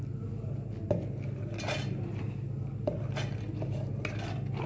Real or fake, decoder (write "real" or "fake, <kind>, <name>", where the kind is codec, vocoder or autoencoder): real